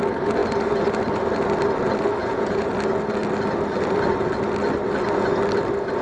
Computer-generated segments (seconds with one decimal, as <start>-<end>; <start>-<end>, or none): 2.2-2.7